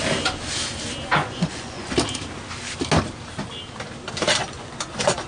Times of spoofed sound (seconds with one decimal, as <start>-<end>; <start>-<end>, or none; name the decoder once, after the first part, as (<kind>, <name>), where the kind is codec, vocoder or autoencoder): 1.2-1.9 (vocoder, Vocos); 4.4-5.3